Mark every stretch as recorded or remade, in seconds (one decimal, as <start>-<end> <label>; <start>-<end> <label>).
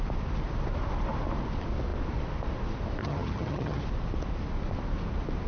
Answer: 0.0-3.0 recorded; 3.0-3.8 remade; 3.8-5.5 recorded